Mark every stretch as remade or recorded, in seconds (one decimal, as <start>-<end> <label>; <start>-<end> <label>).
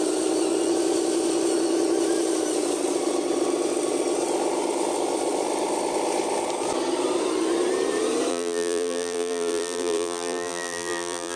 0.0-8.3 recorded; 8.3-11.4 remade